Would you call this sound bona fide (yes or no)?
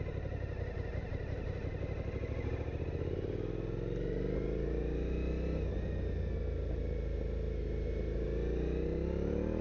yes